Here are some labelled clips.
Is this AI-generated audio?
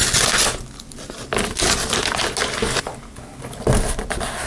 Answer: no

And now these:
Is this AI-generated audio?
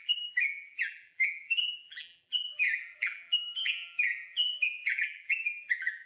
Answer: yes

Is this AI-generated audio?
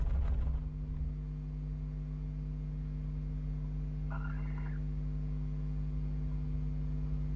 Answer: no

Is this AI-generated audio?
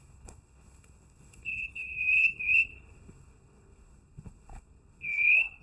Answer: yes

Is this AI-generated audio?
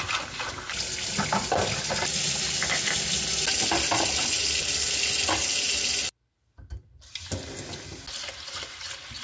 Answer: no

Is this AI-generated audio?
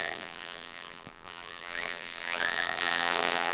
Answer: yes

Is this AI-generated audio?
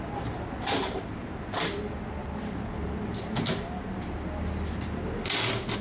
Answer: no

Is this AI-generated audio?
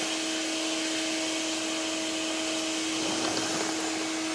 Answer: no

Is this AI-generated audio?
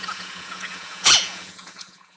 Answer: yes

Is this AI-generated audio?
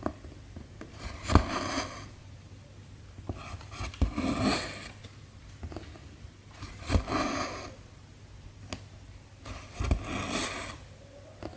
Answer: no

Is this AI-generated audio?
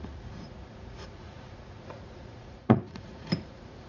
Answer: yes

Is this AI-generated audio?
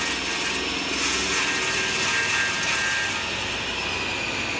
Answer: no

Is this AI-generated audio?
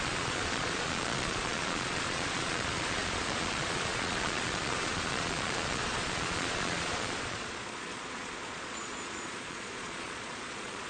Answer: yes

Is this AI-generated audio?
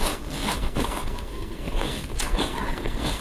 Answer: yes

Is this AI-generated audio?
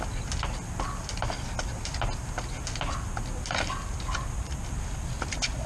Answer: no